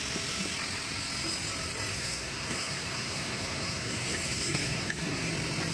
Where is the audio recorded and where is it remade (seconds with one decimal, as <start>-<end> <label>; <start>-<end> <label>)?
0.0-1.9 recorded; 1.9-5.3 remade; 5.3-5.7 recorded